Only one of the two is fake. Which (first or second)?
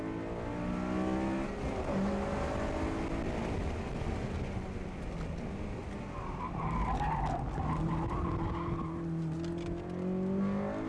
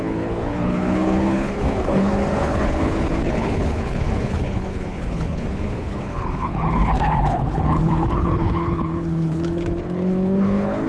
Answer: second